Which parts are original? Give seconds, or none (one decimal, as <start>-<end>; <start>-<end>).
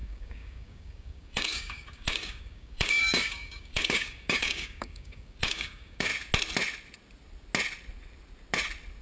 6.1-9.0